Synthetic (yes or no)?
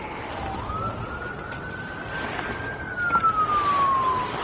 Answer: no